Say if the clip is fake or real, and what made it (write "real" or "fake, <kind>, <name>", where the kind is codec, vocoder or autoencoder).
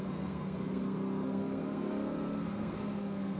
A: fake, codec, SNAC